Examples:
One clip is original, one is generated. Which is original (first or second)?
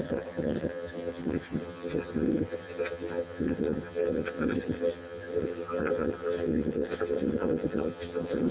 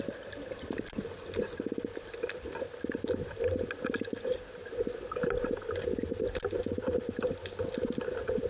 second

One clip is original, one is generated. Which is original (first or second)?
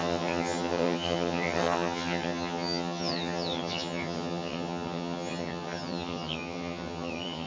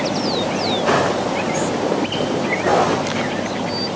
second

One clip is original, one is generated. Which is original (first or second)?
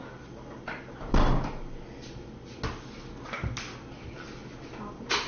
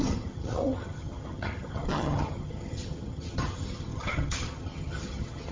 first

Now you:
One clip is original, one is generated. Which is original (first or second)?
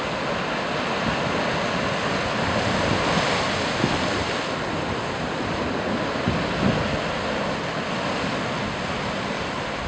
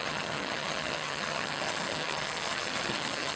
first